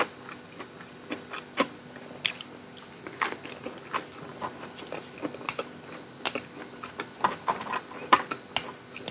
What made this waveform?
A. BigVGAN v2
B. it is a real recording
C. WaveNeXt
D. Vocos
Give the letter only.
B